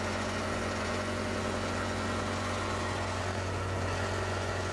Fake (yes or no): yes